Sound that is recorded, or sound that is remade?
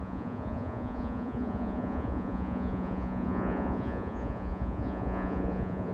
remade